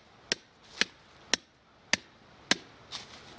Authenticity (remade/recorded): recorded